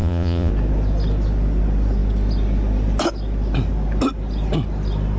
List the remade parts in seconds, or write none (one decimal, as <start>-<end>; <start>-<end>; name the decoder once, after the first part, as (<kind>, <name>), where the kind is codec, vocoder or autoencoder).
0.0-0.5 (vocoder, Vocos)